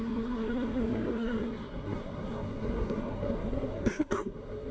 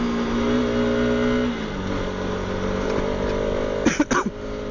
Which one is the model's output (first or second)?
first